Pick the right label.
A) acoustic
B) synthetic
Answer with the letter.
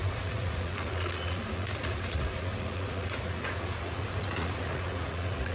B